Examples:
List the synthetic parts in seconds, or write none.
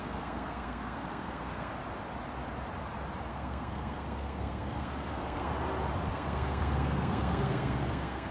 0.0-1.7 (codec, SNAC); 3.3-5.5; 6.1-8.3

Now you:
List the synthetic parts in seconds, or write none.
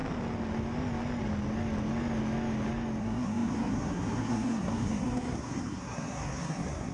3.0-6.9 (codec, SNAC)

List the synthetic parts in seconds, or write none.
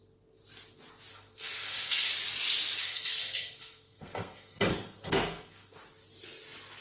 1.1-2.1 (codec, SNAC); 2.8-5.8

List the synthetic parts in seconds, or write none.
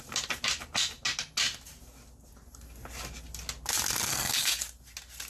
4.1-4.6 (codec, SNAC)